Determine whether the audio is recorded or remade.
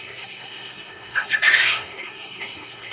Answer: remade